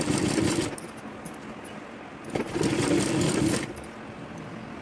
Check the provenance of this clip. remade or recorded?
recorded